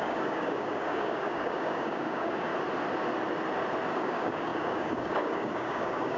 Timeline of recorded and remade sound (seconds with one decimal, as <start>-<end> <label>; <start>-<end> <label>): 0.0-2.5 remade; 2.5-3.9 recorded; 3.9-6.2 remade